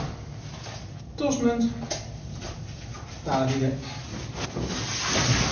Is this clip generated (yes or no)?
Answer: no